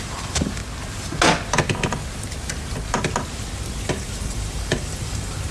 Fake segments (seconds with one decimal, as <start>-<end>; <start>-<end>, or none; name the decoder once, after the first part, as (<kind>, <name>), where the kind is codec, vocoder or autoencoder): 0.0-0.6 (vocoder, BigVGAN v2); 3.9-5.5